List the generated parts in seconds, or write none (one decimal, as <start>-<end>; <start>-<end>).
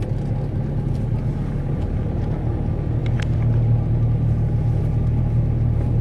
none